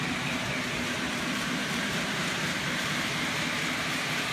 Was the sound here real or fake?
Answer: fake